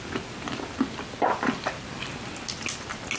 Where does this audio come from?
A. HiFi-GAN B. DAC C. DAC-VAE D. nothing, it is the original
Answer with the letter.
D